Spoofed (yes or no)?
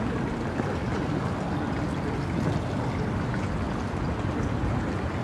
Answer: no